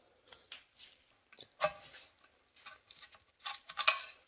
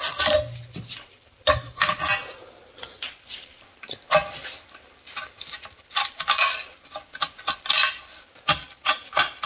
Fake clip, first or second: second